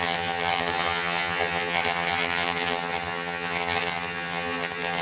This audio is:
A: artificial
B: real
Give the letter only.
A